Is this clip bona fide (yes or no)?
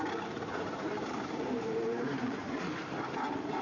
no